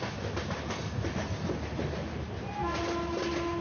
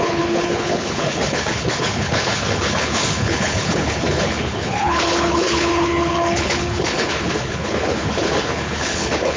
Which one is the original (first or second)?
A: first